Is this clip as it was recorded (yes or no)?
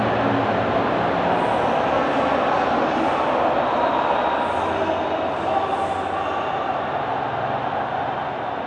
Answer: yes